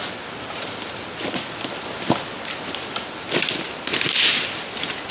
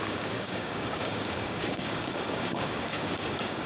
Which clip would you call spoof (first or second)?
second